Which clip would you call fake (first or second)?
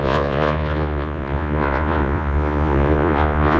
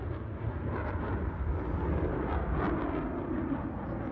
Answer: first